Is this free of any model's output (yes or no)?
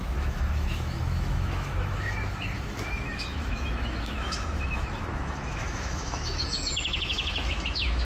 no